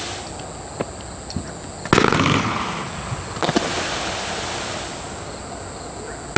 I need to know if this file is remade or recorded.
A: recorded